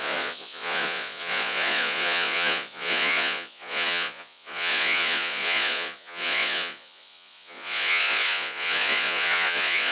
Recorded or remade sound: remade